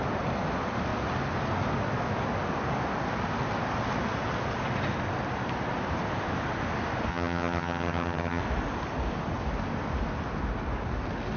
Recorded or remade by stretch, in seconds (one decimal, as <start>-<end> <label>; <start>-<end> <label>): 0.0-7.1 recorded; 7.1-8.4 remade; 8.4-11.4 recorded